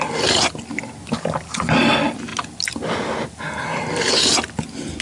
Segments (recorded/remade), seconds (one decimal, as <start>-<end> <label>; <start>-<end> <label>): 0.0-5.0 recorded